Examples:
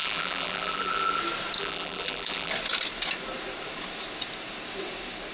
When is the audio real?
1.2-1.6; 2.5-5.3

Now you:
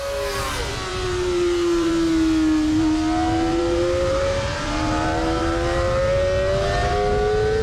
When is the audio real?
0.0-0.9; 1.9-3.5; 6.0-7.6

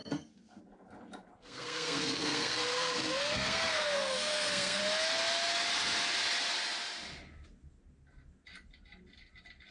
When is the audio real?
0.6-1.4; 4.8-9.7

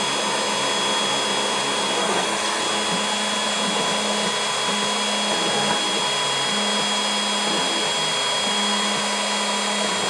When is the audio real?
0.0-2.0; 2.6-10.1

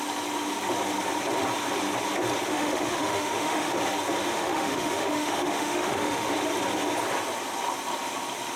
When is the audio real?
0.0-2.5; 3.7-4.3; 6.3-8.6

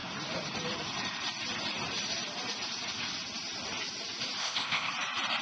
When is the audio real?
0.0-4.4; 4.9-5.4

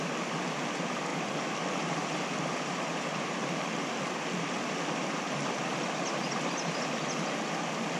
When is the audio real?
0.0-1.1; 5.9-8.0

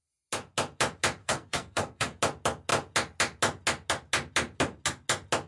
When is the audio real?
0.0-1.2; 2.2-5.5